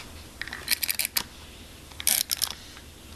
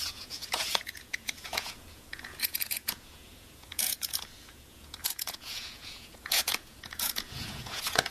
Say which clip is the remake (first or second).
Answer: second